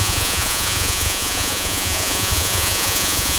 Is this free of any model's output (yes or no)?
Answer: no